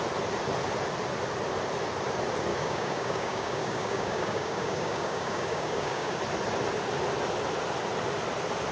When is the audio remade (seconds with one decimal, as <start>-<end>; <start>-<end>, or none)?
2.5-6.2